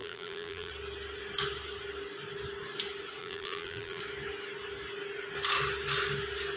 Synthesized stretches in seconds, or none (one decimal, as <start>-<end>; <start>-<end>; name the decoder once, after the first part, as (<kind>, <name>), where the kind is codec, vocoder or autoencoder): 0.0-0.7 (vocoder, BigVGAN v2); 3.2-4.0